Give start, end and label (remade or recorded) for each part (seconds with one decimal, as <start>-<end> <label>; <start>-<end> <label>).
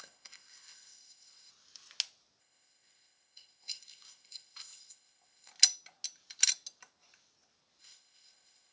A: 0.0-1.5 remade; 1.5-2.4 recorded; 2.4-5.5 remade; 5.5-7.8 recorded; 7.8-8.7 remade